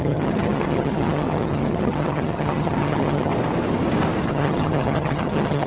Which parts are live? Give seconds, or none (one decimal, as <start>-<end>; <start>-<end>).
3.3-4.3